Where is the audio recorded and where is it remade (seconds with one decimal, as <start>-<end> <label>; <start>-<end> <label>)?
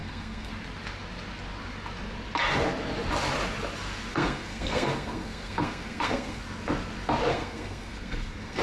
0.0-0.5 remade; 0.5-4.1 recorded; 4.1-6.4 remade; 6.4-7.3 recorded; 7.3-8.6 remade